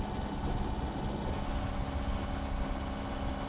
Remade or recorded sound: recorded